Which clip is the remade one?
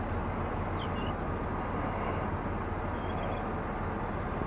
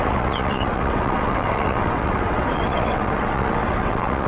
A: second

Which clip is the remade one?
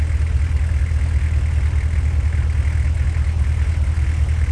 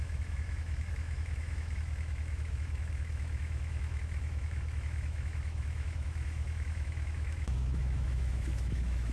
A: second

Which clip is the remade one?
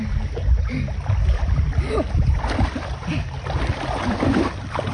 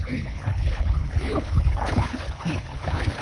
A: second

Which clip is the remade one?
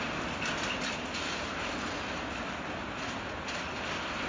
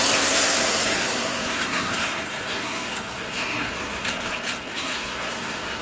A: second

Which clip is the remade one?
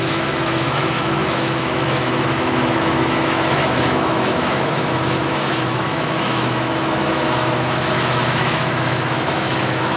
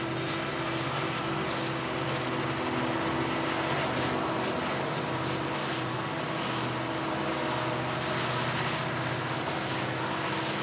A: first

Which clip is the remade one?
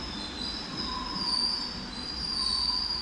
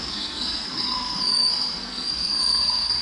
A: second